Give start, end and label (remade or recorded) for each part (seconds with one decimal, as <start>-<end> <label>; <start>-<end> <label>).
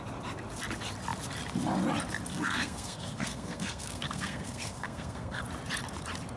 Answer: 0.0-2.3 recorded; 2.3-5.4 remade; 5.4-6.4 recorded